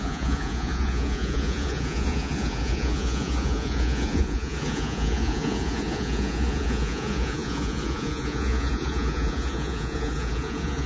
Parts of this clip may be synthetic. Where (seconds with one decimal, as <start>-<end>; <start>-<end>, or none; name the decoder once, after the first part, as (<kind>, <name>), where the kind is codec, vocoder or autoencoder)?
0.0-10.9 (vocoder, Vocos)